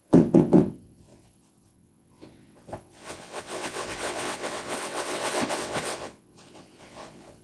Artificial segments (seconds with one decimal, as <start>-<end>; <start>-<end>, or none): 0.0-7.4